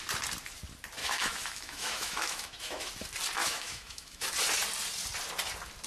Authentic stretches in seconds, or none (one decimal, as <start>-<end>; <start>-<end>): 0.0-1.0; 2.9-3.4; 4.3-5.9

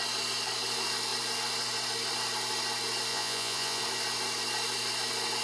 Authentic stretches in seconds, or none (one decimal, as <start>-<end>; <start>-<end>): 0.0-3.1; 3.8-5.4